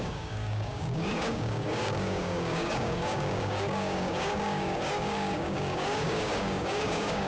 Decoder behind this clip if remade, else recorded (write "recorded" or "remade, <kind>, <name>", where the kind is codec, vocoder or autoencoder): remade, codec, DAC